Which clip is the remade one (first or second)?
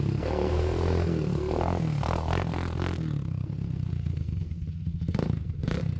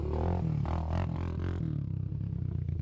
first